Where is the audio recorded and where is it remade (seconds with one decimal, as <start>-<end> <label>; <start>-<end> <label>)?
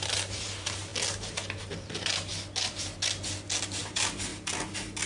0.0-0.9 remade; 0.9-1.7 recorded; 1.7-2.3 remade; 2.3-3.8 recorded; 3.8-4.3 remade; 4.3-5.1 recorded